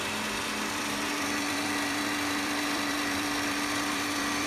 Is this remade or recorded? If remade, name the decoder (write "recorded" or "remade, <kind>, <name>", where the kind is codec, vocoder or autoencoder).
remade, vocoder, BigVGAN v2